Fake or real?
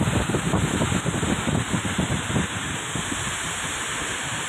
real